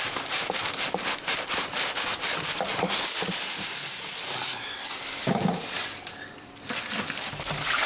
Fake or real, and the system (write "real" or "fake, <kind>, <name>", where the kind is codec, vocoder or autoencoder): fake, vocoder, BigVGAN v2